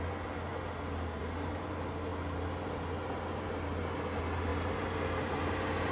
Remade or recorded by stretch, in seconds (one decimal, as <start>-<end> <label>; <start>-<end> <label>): 0.0-5.9 recorded